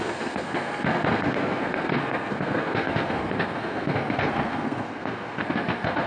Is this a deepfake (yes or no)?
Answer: yes